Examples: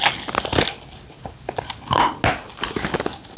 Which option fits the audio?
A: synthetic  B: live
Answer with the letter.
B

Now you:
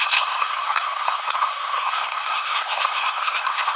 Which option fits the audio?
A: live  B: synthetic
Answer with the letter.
B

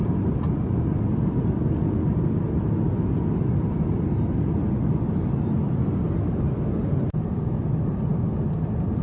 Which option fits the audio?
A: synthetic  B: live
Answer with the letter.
B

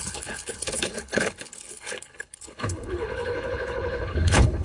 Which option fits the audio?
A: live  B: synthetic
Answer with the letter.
B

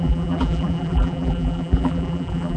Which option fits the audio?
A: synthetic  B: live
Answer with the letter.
A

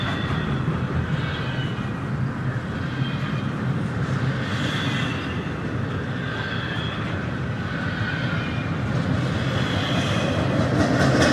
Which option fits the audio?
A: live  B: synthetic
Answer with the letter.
A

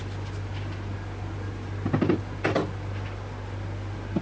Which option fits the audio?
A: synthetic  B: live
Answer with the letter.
B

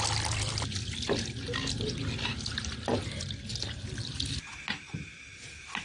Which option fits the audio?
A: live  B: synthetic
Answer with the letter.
A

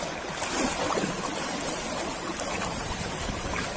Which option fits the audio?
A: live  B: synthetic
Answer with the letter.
A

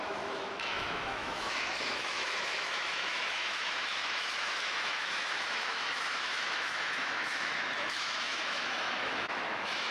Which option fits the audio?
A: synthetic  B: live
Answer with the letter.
A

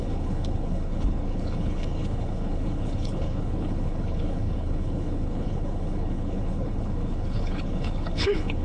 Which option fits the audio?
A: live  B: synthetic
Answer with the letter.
B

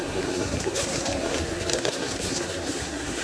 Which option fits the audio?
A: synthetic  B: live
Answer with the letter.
A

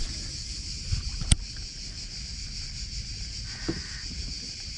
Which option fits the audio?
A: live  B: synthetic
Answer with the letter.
A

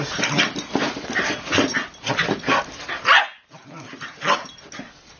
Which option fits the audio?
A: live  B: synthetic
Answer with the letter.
A